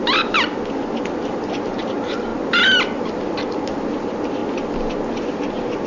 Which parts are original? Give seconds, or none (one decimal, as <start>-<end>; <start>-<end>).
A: 0.0-5.9